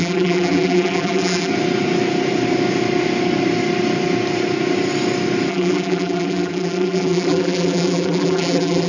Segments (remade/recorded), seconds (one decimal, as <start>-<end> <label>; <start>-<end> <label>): 0.0-1.5 remade; 1.5-5.5 recorded; 5.5-8.9 remade